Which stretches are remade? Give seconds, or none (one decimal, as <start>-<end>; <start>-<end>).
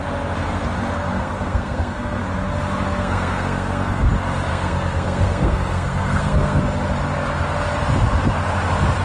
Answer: 1.1-2.2; 2.9-4.1; 4.5-6.6